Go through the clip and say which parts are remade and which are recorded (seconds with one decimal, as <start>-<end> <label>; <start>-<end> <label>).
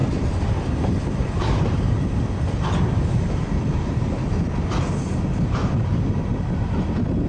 0.0-4.4 remade; 4.4-5.6 recorded; 5.6-6.5 remade; 6.5-7.3 recorded